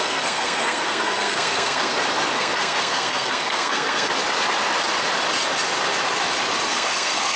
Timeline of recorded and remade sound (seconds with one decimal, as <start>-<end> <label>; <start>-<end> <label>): 0.0-1.9 remade; 1.9-2.4 recorded; 2.4-4.1 remade; 4.1-6.7 recorded; 6.7-7.4 remade